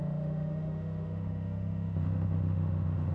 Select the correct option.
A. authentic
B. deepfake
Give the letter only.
B